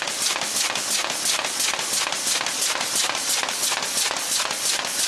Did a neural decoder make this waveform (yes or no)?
no